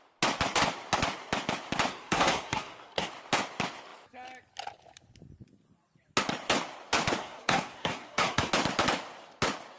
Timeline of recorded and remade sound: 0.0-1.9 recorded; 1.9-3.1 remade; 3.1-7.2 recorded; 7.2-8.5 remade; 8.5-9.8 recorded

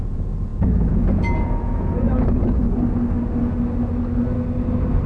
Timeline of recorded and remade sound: 0.0-2.6 remade; 2.6-5.1 recorded